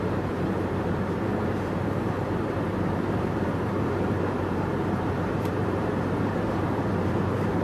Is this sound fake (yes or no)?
yes